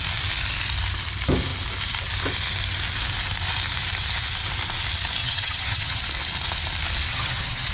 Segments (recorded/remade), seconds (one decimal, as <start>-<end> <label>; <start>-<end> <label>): 0.0-5.2 recorded; 5.2-6.0 remade; 6.0-7.1 recorded; 7.1-7.7 remade